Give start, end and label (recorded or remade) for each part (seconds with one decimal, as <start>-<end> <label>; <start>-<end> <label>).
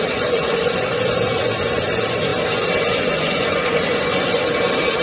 0.0-2.3 remade; 2.3-2.8 recorded; 2.8-4.4 remade; 4.4-5.0 recorded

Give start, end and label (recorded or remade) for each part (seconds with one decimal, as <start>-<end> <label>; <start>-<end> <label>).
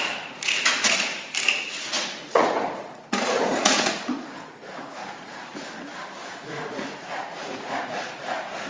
0.0-1.1 remade; 1.1-1.6 recorded; 1.6-5.5 remade; 5.5-6.3 recorded; 6.3-8.7 remade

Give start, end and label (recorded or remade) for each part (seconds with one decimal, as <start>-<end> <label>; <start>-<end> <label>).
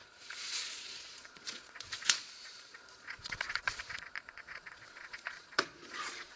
0.0-6.4 remade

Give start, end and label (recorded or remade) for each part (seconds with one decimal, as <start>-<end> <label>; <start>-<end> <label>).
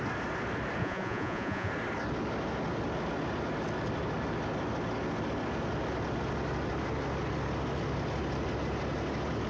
0.0-0.8 recorded; 0.8-1.7 remade; 1.7-9.5 recorded